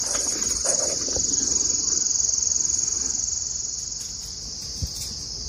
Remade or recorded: recorded